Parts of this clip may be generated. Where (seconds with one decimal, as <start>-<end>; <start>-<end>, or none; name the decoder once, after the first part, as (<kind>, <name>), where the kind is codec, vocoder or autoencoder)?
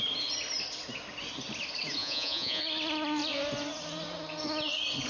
2.0-2.6 (vocoder, Vocos)